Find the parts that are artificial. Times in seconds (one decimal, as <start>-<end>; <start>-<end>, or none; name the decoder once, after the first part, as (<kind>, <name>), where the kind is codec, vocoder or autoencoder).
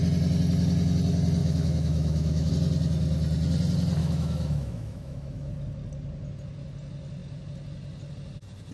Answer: 1.4-2.5 (autoencoder, DAC-VAE); 4.0-5.5